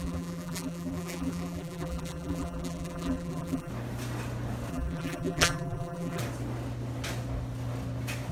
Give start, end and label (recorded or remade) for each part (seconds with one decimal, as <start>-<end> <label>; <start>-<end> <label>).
0.0-3.7 remade; 3.7-4.7 recorded; 4.7-6.2 remade; 6.2-8.3 recorded